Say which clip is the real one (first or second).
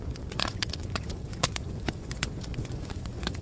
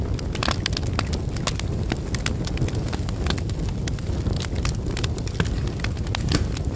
second